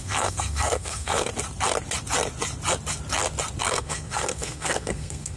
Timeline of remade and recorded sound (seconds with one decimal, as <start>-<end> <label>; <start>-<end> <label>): 0.0-1.3 remade; 1.3-3.6 recorded; 3.6-5.4 remade